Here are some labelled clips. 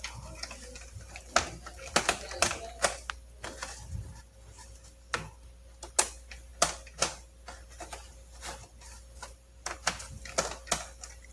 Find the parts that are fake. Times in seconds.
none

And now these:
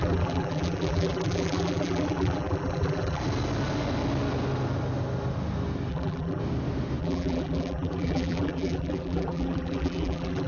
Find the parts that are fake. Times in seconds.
0.0-3.2; 5.9-6.4; 7.0-10.5

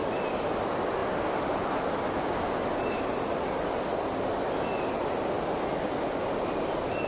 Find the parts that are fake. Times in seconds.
none